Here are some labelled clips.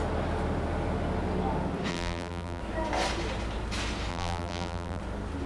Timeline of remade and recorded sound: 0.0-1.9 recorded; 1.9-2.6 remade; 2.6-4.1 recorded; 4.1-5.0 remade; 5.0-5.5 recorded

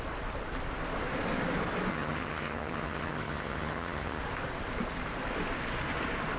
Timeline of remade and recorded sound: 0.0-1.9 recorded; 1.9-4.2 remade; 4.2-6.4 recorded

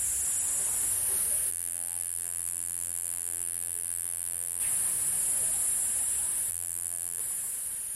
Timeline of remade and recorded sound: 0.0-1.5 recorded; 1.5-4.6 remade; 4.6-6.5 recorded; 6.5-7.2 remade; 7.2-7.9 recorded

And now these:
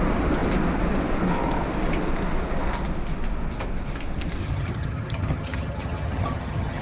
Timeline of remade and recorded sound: 0.0-4.4 recorded; 4.4-6.8 remade

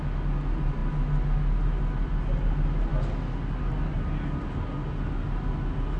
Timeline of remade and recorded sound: 0.0-6.0 recorded

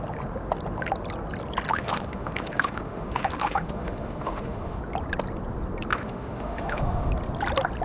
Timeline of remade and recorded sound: 0.0-1.7 recorded; 1.7-4.8 remade; 4.8-5.9 recorded; 5.9-7.1 remade; 7.1-7.8 recorded